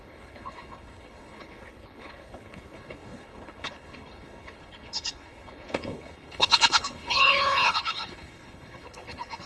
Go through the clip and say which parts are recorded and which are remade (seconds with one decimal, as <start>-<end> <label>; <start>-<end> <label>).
0.0-9.5 remade